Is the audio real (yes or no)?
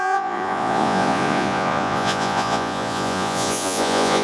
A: no